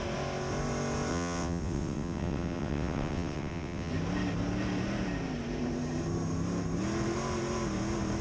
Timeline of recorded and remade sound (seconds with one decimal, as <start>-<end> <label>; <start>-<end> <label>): 0.0-1.1 recorded; 1.1-3.9 remade; 3.9-8.2 recorded